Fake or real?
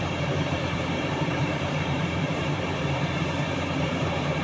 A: fake